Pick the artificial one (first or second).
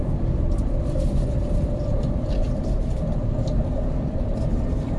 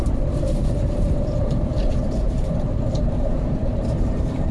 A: second